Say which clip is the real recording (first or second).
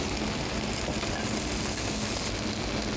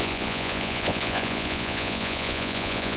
first